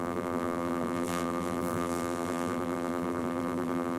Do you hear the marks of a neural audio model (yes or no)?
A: yes